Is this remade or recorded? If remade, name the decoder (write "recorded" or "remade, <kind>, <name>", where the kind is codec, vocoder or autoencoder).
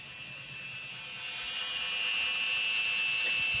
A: recorded